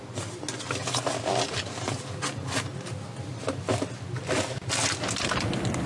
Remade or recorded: recorded